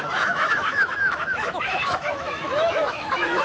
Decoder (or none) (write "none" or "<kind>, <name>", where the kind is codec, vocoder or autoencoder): autoencoder, DAC-VAE